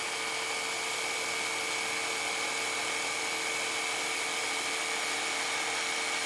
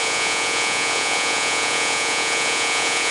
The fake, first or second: second